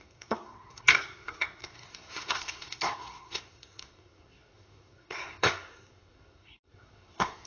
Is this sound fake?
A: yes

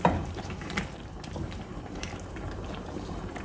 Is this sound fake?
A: yes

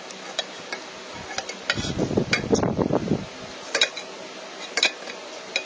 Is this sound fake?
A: no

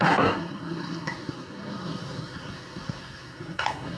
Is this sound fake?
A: yes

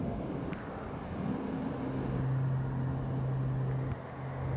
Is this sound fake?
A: no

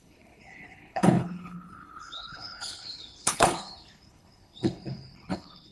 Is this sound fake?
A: yes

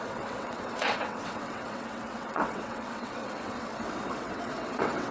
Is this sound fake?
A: yes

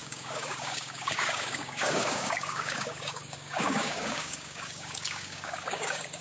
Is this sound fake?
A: yes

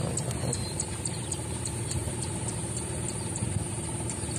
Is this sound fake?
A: yes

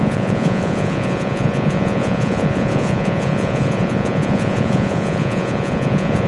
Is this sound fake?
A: yes